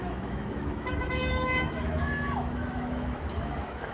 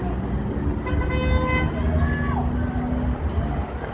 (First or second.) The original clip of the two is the second